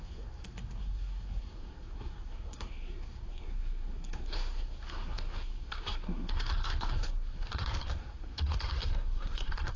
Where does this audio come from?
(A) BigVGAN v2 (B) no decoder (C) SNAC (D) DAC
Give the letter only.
C